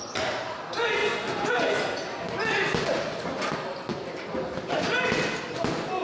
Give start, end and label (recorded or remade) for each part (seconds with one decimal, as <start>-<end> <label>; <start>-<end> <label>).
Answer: 0.0-6.0 recorded

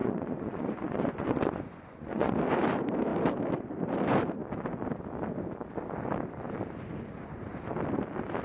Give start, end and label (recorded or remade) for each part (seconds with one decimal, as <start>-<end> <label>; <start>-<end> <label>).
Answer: 0.0-2.3 remade; 2.3-8.4 recorded

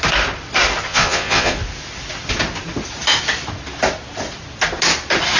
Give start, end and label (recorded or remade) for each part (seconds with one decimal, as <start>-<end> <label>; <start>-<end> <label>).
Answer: 0.0-0.9 recorded; 0.9-1.6 remade; 1.6-5.4 recorded

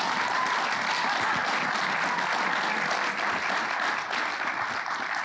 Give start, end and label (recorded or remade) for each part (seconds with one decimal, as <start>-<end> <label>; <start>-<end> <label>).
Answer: 0.0-5.2 recorded

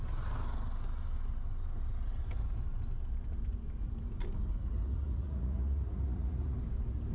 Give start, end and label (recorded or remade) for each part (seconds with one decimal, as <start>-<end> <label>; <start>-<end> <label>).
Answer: 0.0-4.6 recorded; 4.6-6.6 remade; 6.6-7.1 recorded

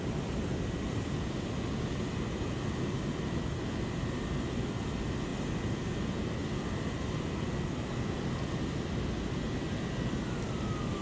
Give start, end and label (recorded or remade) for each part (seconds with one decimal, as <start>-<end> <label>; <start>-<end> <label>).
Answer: 0.0-11.0 recorded

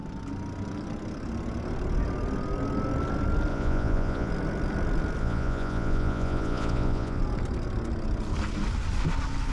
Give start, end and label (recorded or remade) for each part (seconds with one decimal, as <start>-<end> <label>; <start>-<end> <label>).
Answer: 0.0-3.5 recorded; 3.5-4.3 remade; 4.3-5.2 recorded; 5.2-7.2 remade; 7.2-9.5 recorded

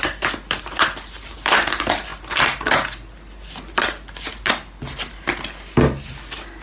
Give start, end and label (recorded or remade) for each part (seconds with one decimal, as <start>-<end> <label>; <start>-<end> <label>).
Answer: 0.0-6.6 recorded